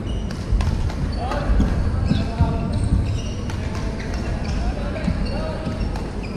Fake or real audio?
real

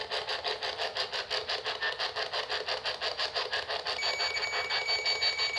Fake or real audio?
real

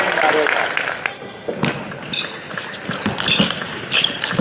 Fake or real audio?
real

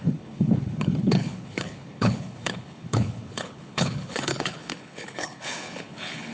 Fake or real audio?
fake